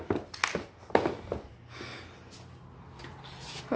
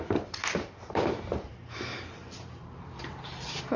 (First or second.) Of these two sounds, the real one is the first